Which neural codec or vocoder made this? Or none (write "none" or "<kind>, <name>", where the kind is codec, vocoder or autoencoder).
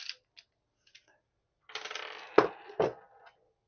none